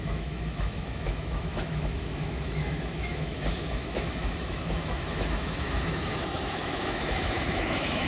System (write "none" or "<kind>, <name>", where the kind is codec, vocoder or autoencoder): autoencoder, DAC-VAE